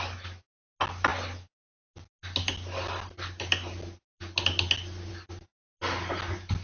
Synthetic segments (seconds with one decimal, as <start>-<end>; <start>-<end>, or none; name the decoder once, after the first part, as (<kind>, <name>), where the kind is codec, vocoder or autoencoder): none